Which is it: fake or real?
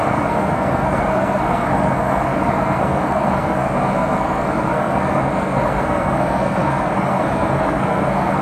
fake